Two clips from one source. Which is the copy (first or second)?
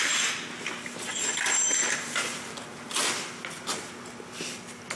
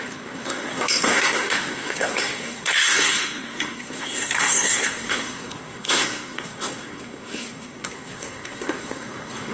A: second